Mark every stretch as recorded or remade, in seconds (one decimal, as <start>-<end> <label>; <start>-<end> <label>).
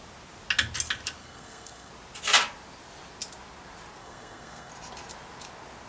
0.0-1.2 recorded; 1.2-1.9 remade; 1.9-4.0 recorded; 4.0-4.7 remade; 4.7-5.9 recorded